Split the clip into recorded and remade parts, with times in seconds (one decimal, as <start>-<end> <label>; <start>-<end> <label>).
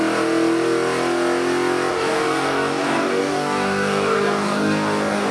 0.0-1.9 recorded; 1.9-5.3 remade